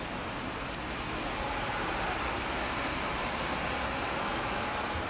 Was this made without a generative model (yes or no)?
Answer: yes